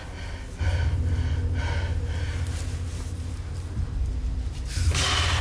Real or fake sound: real